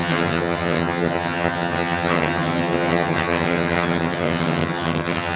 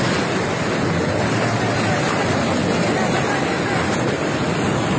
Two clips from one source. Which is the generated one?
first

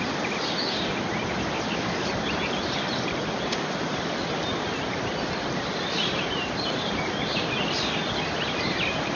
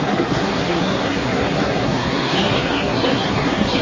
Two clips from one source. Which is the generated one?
second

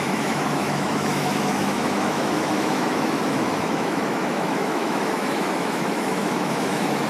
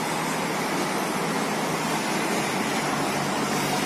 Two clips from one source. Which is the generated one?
first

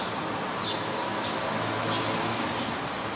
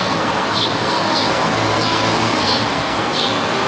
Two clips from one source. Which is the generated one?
second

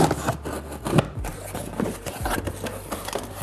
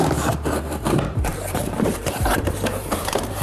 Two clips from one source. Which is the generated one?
second